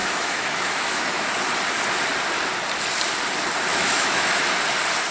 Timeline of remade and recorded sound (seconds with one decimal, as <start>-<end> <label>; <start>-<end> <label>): 0.0-1.3 remade; 1.3-3.7 recorded; 3.7-4.4 remade; 4.4-5.1 recorded